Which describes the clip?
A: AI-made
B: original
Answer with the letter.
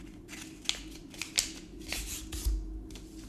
B